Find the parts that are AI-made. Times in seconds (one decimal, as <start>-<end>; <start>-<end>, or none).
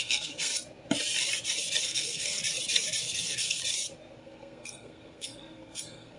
0.0-0.5; 1.8-2.4; 3.0-3.6; 4.2-6.2